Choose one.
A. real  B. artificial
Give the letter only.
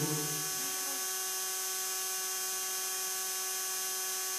A